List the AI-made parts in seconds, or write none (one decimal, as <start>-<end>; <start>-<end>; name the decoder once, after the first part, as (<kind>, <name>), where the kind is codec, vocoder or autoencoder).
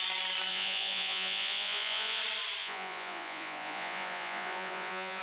0.5-2.2 (vocoder, Vocos); 2.6-5.2